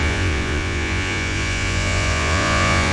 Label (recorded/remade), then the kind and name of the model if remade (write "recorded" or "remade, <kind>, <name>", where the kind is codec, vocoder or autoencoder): remade, vocoder, Vocos